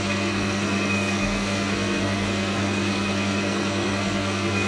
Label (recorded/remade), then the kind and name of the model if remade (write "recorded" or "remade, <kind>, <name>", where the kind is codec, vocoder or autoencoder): remade, codec, SNAC